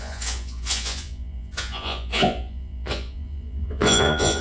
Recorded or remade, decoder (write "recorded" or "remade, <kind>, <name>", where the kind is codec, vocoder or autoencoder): remade, vocoder, Vocos